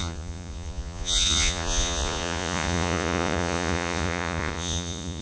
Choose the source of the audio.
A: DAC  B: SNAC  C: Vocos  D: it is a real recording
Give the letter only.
C